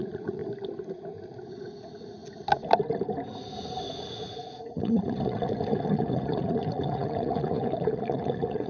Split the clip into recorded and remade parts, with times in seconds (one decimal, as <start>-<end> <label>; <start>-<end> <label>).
0.0-0.4 remade; 0.4-1.5 recorded; 1.5-2.2 remade; 2.2-3.9 recorded; 3.9-8.7 remade